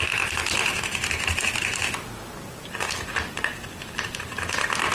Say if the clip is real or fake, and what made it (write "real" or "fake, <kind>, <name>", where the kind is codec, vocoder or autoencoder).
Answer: real